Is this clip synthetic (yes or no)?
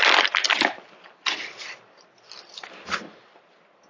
no